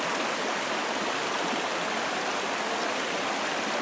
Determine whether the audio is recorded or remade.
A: recorded